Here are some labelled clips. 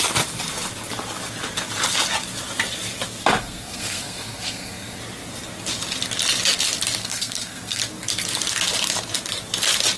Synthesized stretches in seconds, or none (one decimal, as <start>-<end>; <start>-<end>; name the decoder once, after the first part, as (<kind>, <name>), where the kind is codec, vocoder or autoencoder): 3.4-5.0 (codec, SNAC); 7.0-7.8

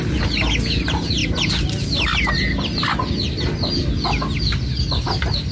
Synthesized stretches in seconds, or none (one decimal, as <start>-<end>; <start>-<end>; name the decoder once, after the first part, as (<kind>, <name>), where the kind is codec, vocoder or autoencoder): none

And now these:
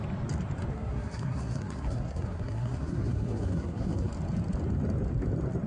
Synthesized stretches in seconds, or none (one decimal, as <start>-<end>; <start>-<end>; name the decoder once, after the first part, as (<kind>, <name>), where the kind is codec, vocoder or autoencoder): 0.7-4.1 (codec, SNAC)